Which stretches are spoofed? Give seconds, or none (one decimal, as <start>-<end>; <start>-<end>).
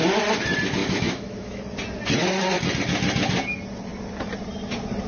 0.8-1.6